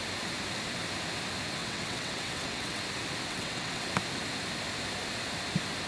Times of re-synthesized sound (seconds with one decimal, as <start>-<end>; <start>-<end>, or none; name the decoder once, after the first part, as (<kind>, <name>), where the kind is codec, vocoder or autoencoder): 1.6-2.8 (vocoder, WaveNeXt); 3.3-3.9